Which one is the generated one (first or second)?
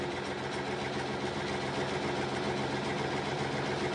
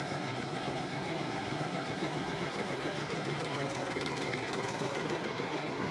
second